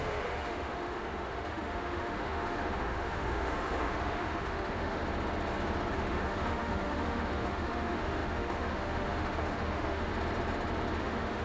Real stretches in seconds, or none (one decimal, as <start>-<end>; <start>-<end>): 5.0-5.9; 10.1-11.0